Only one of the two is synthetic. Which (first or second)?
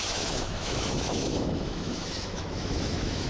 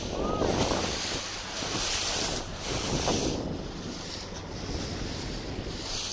first